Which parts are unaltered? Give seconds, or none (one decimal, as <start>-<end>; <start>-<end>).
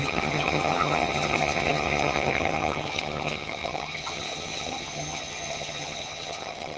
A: none